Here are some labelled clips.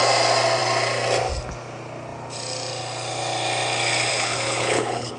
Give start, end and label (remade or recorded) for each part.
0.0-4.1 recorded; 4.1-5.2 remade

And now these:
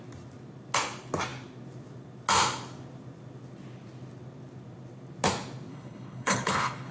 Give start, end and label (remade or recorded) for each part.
0.0-5.7 recorded; 5.7-6.9 remade